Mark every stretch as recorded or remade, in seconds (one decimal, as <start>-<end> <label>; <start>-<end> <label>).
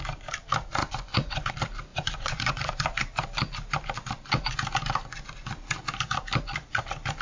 0.0-0.8 recorded; 0.8-1.5 remade; 1.5-1.9 recorded; 1.9-2.7 remade; 2.7-7.2 recorded